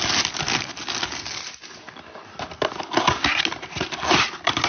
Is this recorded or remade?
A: recorded